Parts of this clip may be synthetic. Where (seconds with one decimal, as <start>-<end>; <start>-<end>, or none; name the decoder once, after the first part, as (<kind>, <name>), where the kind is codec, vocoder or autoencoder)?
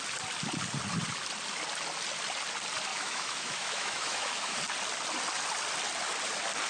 2.9-4.6 (autoencoder, DAC-VAE)